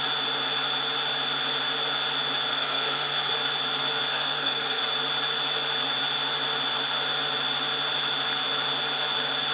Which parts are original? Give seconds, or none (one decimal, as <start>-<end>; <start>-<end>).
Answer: 0.0-2.5; 3.3-4.1; 4.8-9.5